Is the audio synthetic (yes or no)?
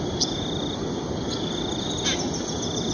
no